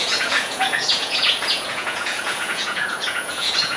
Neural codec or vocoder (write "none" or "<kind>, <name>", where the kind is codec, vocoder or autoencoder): vocoder, Vocos